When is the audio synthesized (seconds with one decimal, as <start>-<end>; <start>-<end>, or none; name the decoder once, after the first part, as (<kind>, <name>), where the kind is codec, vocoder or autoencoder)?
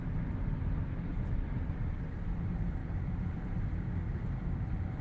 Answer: none